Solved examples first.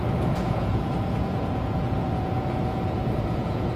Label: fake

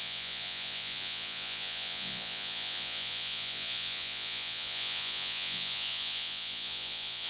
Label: fake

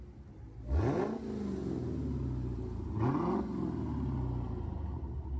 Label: real